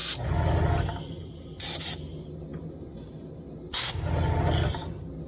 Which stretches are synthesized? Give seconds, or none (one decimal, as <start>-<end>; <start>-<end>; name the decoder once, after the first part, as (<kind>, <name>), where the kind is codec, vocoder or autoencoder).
none